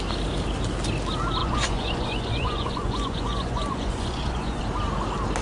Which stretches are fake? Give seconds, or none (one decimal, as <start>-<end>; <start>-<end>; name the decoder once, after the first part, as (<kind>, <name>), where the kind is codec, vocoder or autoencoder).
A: 1.4-4.6 (vocoder, Vocos)